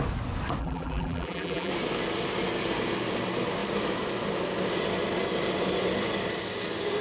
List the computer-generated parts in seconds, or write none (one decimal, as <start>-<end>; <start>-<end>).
0.6-1.7

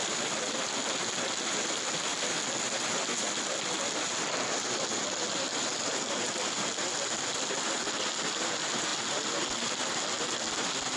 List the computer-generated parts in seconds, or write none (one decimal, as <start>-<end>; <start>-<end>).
none

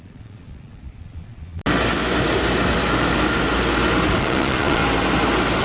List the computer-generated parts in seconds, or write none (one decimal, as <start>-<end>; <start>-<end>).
0.0-1.6; 4.2-4.8